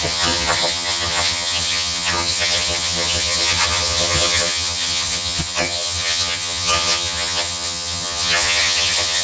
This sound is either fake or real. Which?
fake